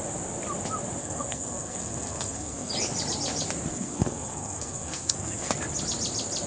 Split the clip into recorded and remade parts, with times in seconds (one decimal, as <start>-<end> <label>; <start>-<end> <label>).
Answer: 0.0-1.0 recorded; 1.0-2.7 remade; 2.7-3.7 recorded; 3.7-5.5 remade; 5.5-6.5 recorded